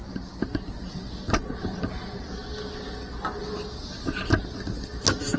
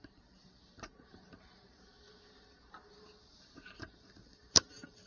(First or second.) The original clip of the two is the first